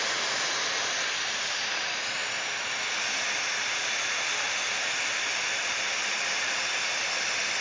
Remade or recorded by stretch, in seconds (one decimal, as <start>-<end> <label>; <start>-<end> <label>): 0.0-5.3 recorded; 5.3-7.0 remade; 7.0-7.6 recorded